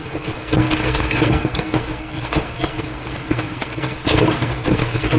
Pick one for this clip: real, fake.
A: fake